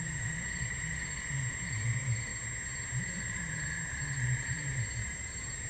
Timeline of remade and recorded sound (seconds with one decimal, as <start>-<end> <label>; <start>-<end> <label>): 0.0-2.3 remade; 2.3-3.0 recorded; 3.0-5.7 remade